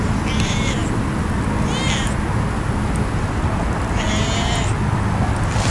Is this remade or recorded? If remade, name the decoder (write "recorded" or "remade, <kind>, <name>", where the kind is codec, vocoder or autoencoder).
recorded